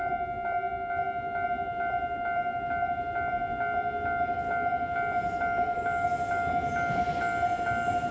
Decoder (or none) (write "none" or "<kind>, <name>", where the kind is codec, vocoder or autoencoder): none